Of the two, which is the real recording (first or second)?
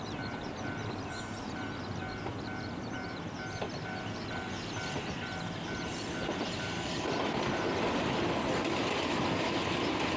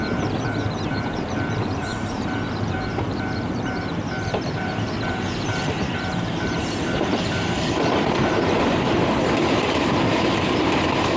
first